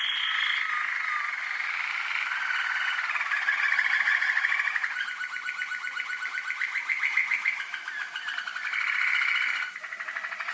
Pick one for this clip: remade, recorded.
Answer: recorded